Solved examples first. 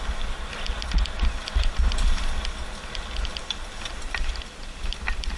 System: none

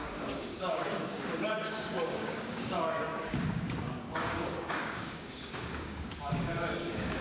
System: codec, DAC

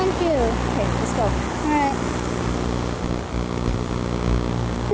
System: none